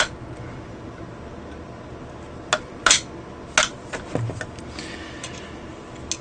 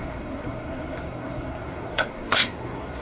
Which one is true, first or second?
first